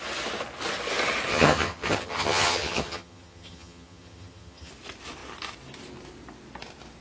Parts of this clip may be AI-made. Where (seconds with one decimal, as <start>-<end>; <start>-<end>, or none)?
1.3-4.7